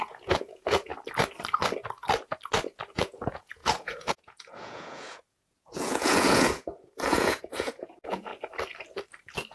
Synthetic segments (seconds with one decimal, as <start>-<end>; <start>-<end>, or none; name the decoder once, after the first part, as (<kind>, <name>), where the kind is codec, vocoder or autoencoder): 0.0-0.9 (vocoder, Vocos); 2.9-8.3